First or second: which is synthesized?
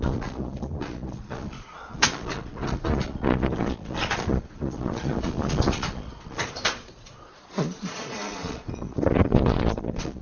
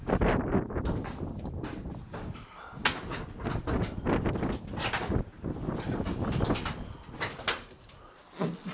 first